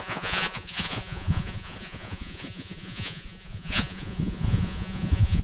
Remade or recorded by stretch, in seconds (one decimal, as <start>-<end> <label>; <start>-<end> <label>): 0.0-5.4 remade